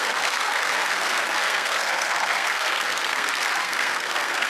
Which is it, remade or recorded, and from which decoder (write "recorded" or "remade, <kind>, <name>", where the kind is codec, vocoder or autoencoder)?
remade, codec, SNAC